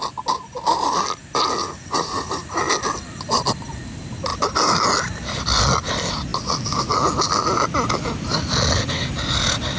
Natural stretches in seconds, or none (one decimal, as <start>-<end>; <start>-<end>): 0.0-1.6; 2.6-9.8